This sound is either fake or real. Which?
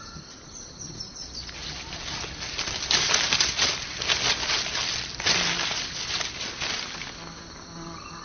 real